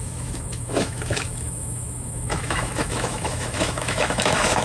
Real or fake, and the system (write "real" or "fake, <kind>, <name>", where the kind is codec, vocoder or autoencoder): fake, autoencoder, DAC-VAE